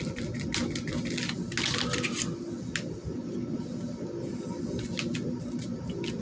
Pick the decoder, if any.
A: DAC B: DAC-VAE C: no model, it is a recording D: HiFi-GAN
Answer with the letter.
C